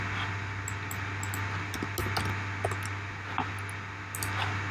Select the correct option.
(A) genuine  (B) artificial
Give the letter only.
A